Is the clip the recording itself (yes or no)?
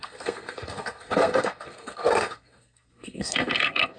no